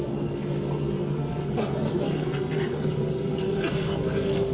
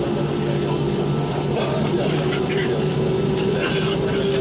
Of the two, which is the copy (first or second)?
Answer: first